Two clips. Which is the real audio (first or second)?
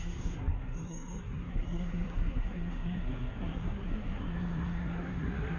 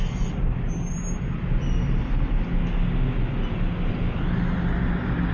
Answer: second